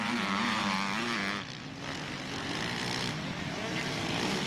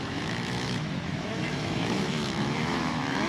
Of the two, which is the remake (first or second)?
second